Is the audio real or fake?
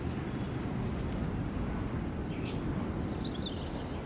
real